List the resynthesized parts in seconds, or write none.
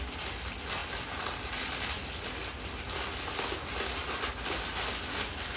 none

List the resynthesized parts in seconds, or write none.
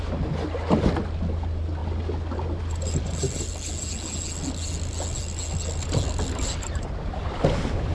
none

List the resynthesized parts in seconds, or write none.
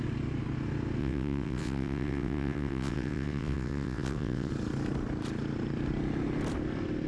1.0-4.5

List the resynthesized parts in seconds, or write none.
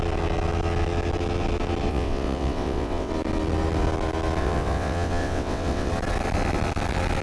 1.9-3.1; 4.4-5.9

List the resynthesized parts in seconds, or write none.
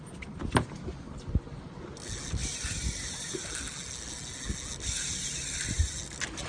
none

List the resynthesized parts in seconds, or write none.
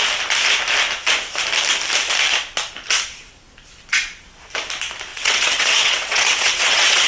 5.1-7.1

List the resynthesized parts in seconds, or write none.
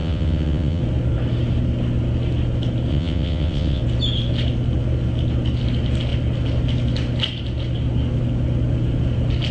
0.0-0.8; 2.9-3.8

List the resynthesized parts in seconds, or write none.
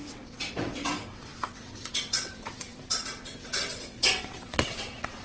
0.0-5.2